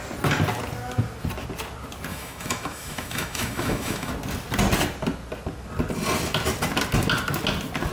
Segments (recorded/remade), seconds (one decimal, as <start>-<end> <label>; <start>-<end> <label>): 0.0-2.1 recorded; 2.1-4.1 remade; 4.1-7.9 recorded